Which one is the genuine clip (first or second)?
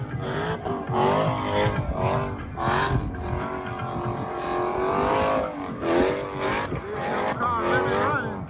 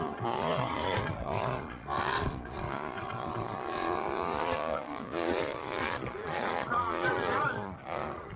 first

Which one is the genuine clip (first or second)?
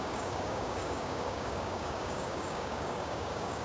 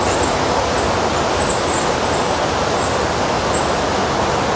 second